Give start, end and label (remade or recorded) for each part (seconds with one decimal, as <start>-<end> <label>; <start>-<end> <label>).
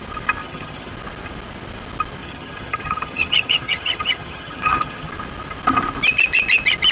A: 0.0-0.4 recorded; 0.4-0.9 remade; 0.9-2.2 recorded; 2.2-5.1 remade; 5.1-6.9 recorded